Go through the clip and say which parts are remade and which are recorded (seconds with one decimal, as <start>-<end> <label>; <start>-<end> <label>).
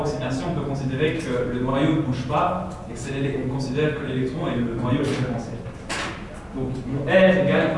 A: 0.0-7.8 recorded